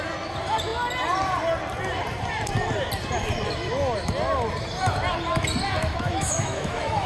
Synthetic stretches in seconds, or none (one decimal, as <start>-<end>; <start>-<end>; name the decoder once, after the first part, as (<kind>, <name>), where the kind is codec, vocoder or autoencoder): 5.8-7.1 (autoencoder, DAC-VAE)